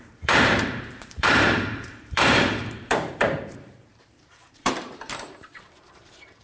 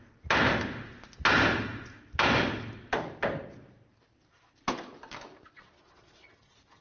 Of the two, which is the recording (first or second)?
second